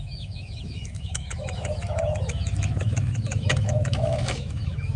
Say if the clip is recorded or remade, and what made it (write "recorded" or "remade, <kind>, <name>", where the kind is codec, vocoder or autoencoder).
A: remade, autoencoder, DAC-VAE